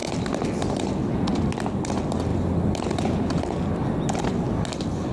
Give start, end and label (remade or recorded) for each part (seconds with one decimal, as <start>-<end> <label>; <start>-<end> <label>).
0.0-5.1 recorded